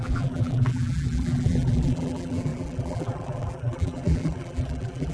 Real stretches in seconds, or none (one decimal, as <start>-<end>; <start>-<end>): none